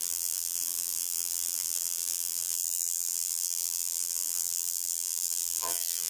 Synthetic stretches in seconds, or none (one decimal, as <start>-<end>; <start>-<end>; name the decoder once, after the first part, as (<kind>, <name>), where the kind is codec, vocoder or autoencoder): 0.0-6.1 (vocoder, BigVGAN v2)